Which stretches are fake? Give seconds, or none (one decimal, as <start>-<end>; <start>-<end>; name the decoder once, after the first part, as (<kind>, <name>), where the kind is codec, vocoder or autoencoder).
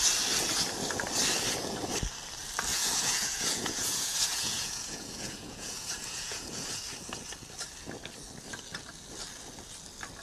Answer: 2.7-6.8 (vocoder, Vocos)